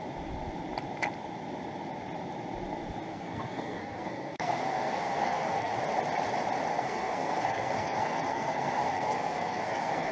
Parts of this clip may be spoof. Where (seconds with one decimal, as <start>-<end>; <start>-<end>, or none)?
3.1-5.7; 6.7-10.1